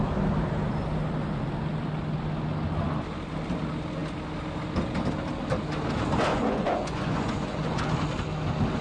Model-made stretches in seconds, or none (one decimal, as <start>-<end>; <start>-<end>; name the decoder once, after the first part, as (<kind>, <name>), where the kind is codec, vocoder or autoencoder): 6.3-7.8 (vocoder, Vocos)